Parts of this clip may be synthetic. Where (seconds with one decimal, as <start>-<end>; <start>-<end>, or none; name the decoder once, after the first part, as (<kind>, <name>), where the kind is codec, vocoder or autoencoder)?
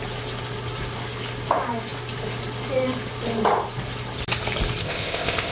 4.8-5.5 (codec, ZipCodec)